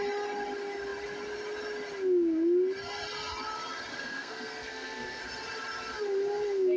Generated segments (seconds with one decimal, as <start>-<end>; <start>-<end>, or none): 3.9-5.2